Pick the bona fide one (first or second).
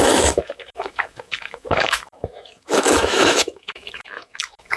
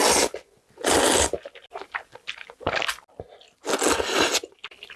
second